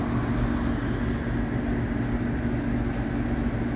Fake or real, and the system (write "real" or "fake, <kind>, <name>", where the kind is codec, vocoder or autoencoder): real